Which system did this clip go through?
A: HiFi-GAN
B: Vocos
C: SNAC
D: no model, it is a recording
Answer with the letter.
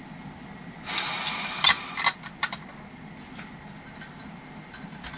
D